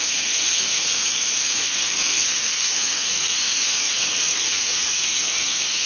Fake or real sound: fake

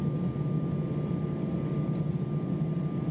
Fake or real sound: real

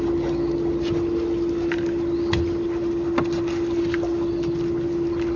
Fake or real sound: real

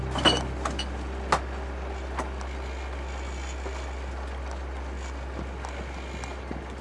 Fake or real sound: real